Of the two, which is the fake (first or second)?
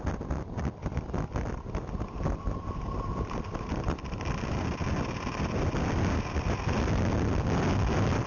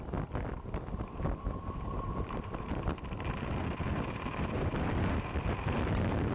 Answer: second